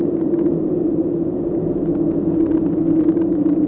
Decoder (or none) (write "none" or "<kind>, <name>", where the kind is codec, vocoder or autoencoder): none